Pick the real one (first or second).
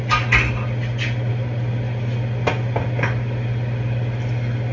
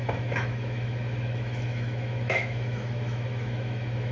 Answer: first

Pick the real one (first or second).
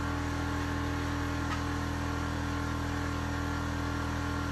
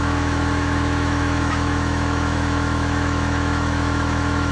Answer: first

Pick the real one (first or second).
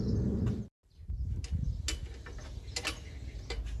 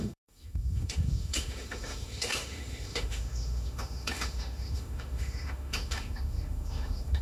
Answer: first